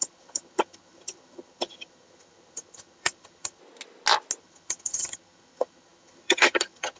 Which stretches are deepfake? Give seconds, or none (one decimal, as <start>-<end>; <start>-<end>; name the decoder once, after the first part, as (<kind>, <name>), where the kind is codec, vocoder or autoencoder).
0.0-3.6 (vocoder, HiFi-GAN); 4.4-7.0

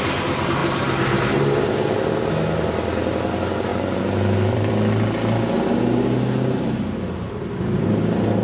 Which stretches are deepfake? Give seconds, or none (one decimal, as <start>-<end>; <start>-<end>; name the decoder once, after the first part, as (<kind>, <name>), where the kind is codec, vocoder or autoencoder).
3.7-4.7 (vocoder, BigVGAN v2)

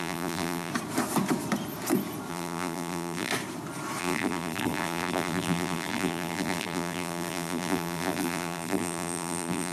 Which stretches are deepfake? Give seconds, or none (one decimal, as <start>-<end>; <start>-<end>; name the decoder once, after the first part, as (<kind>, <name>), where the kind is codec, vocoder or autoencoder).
0.0-0.7 (vocoder, BigVGAN v2); 2.3-3.3; 4.0-9.7

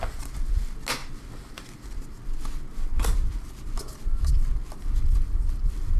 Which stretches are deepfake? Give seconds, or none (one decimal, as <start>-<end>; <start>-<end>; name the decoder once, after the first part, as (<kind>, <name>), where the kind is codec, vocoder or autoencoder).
none

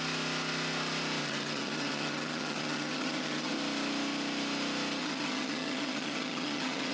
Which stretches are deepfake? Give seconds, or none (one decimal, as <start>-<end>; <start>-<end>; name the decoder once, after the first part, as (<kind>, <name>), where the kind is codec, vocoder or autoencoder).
1.2-3.5 (vocoder, HiFi-GAN); 5.0-6.9

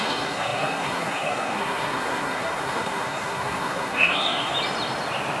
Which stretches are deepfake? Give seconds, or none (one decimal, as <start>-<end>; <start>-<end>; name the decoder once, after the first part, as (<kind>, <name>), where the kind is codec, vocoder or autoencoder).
0.0-4.5 (codec, SNAC)

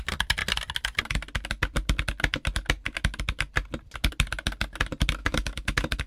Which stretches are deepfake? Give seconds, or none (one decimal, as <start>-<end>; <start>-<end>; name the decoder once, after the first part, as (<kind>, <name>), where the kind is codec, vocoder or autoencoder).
5.2-6.1 (autoencoder, DAC-VAE)